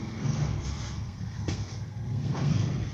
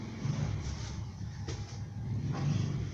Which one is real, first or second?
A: second